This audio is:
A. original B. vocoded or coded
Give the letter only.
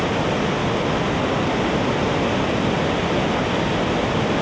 A